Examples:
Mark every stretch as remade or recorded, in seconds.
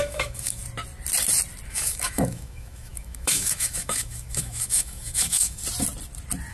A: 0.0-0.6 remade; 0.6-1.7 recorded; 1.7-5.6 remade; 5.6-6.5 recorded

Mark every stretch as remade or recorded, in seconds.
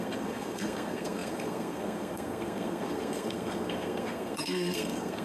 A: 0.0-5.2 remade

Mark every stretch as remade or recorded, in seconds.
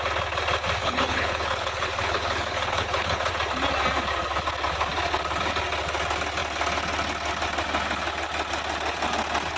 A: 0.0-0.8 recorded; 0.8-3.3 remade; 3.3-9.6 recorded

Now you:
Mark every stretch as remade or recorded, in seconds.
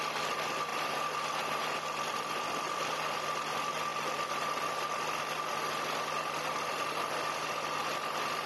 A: 0.0-8.5 recorded